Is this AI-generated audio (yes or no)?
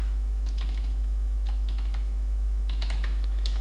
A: yes